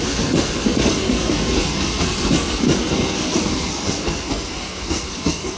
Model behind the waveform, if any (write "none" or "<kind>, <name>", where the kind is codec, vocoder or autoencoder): codec, SNAC